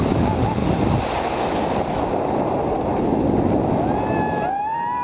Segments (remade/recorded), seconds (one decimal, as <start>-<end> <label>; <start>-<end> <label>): 0.0-5.0 recorded